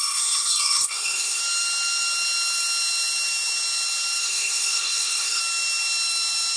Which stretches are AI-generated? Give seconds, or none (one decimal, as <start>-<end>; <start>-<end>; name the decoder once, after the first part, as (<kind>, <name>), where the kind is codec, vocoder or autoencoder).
0.0-1.4 (codec, SNAC); 4.2-5.4